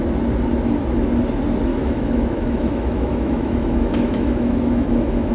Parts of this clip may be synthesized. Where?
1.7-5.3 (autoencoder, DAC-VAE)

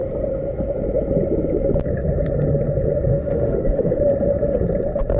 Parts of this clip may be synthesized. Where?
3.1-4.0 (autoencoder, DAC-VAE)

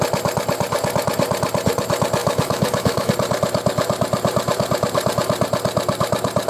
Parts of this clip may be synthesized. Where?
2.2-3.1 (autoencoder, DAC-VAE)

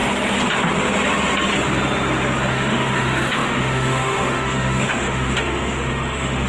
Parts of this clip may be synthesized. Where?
2.5-6.5 (autoencoder, DAC-VAE)

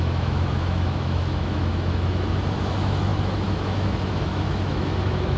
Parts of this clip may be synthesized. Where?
0.0-5.4 (autoencoder, DAC-VAE)

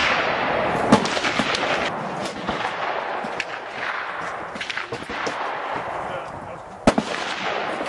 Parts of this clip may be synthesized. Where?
none

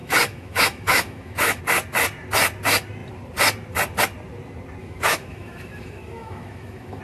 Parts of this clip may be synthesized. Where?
0.0-1.6 (autoencoder, DAC-VAE); 4.8-7.0

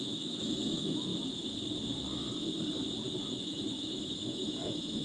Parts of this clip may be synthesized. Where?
0.0-1.1 (autoencoder, DAC-VAE); 3.3-5.0